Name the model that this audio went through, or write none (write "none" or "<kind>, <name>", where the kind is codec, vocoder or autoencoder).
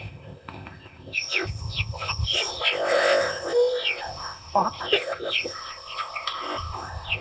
codec, ZipCodec